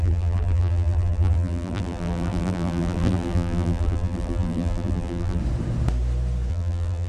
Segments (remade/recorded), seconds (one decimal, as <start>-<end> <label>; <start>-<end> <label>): 0.0-5.4 remade; 5.4-6.5 recorded; 6.5-7.1 remade